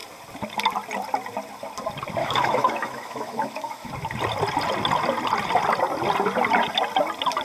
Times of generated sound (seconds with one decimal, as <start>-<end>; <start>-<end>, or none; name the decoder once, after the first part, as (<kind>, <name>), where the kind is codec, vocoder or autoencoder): 2.2-3.9 (autoencoder, DAC-VAE)